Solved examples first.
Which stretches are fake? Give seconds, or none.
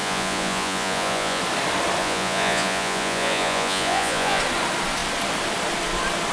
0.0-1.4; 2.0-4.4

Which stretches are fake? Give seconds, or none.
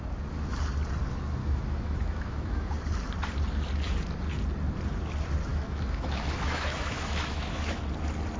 1.4-2.7; 5.5-7.8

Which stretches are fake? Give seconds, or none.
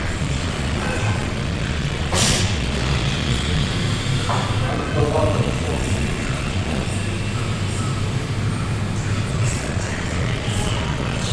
0.0-3.7; 4.7-6.9; 9.3-11.3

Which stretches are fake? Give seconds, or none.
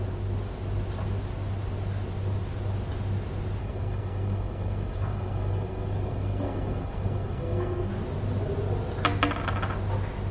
3.6-7.9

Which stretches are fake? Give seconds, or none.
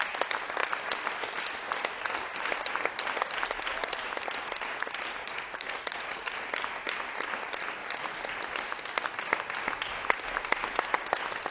5.2-6.5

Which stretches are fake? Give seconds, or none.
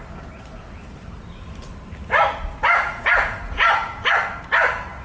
2.6-4.1